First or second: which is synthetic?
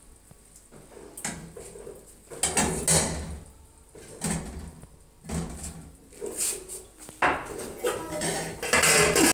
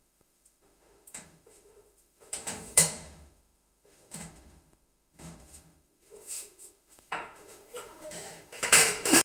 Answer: second